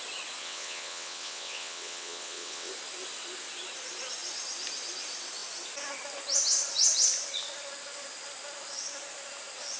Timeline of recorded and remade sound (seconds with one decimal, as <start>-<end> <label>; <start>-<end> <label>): 0.0-0.4 recorded; 0.4-2.7 remade; 2.7-9.8 recorded